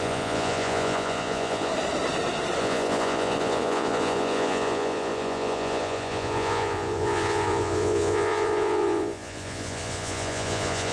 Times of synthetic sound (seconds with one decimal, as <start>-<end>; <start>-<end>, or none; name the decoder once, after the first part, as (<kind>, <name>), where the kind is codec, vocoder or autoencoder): 0.0-1.7 (vocoder, Vocos); 2.6-10.9